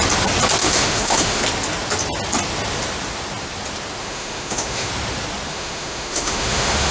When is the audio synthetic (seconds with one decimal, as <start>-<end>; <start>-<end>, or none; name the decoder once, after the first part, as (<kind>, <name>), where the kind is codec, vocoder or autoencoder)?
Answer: 0.6-1.4 (autoencoder, DAC-VAE); 4.0-4.9; 5.5-6.9